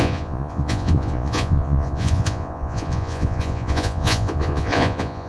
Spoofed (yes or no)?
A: yes